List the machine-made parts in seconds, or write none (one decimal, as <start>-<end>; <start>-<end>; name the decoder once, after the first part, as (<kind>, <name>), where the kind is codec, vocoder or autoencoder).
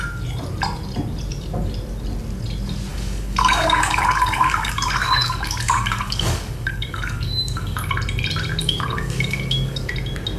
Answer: 2.9-7.9 (codec, DAC); 8.6-9.9